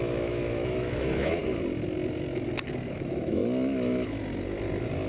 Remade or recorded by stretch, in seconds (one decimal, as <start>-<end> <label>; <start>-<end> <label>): 0.0-1.4 remade; 1.4-2.9 recorded; 2.9-3.4 remade; 3.4-5.1 recorded